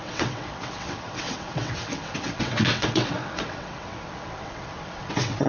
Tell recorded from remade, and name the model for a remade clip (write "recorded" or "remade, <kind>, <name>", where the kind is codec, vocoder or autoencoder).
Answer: remade, vocoder, WaveNeXt